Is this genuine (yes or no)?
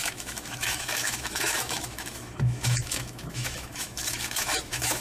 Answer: no